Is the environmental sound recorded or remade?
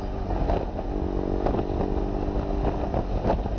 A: recorded